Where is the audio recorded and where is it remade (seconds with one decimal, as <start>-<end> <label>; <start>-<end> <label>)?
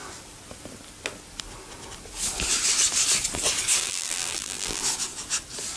0.0-3.8 recorded; 3.8-4.8 remade; 4.8-5.8 recorded